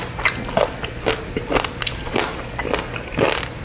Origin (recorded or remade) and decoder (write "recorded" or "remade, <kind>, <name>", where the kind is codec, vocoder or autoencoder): recorded